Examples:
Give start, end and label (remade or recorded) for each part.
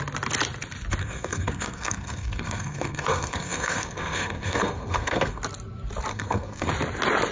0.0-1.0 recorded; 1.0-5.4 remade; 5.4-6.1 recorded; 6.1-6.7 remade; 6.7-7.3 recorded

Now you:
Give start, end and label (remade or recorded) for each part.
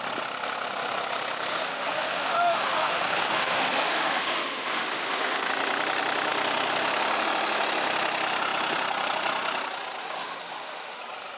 0.0-1.5 recorded; 1.5-5.5 remade; 5.5-10.0 recorded; 10.0-11.0 remade; 11.0-11.4 recorded